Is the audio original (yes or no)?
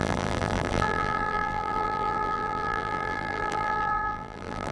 no